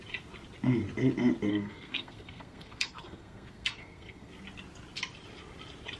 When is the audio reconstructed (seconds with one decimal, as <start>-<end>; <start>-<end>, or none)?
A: 1.5-4.3